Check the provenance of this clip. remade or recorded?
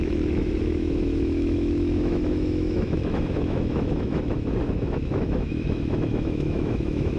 remade